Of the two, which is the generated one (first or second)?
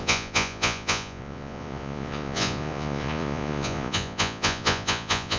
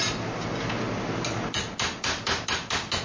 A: first